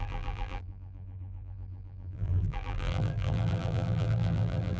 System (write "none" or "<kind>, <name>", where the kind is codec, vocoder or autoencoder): vocoder, BigVGAN v2